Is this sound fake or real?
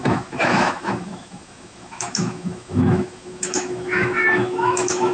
fake